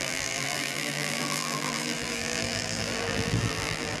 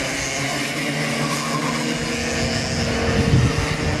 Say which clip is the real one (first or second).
second